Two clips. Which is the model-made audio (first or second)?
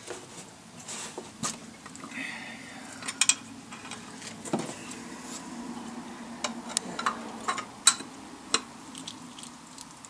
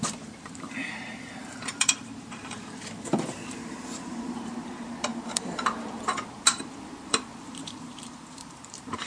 second